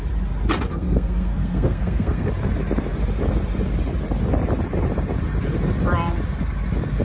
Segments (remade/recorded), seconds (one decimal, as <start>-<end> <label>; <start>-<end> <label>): 0.0-0.7 recorded; 0.7-2.3 remade; 2.3-7.0 recorded